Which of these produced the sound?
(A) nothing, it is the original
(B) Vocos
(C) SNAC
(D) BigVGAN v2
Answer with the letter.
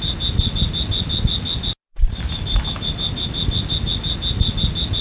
A